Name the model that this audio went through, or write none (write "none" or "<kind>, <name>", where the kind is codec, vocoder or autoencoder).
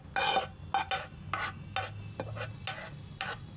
none